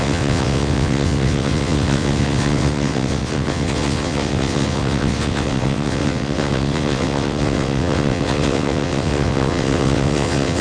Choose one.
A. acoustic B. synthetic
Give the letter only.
B